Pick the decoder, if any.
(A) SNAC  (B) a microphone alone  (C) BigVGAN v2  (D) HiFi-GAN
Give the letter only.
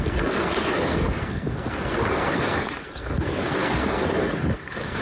A